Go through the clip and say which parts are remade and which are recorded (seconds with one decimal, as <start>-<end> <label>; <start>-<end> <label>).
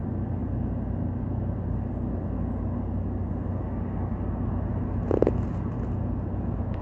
0.0-6.8 recorded